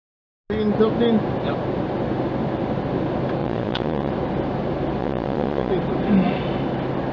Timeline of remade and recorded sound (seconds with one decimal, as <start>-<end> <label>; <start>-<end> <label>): 0.0-3.4 recorded; 3.4-4.1 remade; 4.1-5.0 recorded; 5.0-5.7 remade; 5.7-7.1 recorded